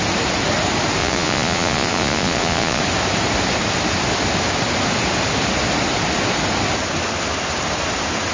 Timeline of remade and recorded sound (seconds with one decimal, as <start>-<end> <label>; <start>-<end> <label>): 0.0-1.0 recorded; 1.0-2.8 remade; 2.8-8.3 recorded